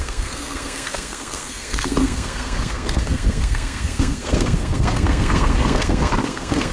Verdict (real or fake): fake